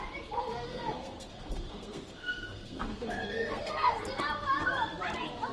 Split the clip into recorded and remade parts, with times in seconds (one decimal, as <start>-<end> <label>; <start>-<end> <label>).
0.0-0.7 recorded; 0.7-4.0 remade; 4.0-5.5 recorded